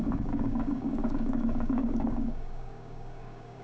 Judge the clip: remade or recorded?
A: remade